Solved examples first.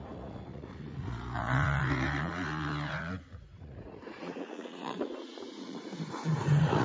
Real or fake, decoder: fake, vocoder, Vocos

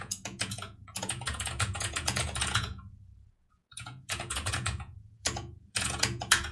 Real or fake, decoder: fake, vocoder, Vocos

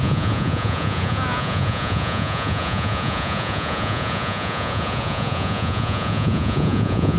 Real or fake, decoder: fake, vocoder, Vocos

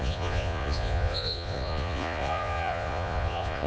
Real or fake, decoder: fake, vocoder, Vocos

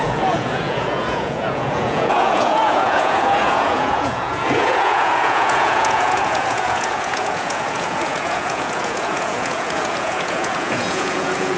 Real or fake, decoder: fake, vocoder, Vocos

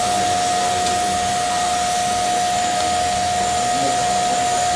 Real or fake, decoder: real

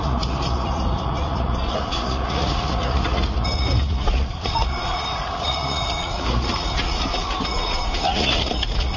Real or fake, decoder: fake, vocoder, Vocos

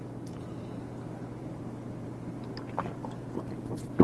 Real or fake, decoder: real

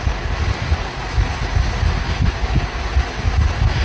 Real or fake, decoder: real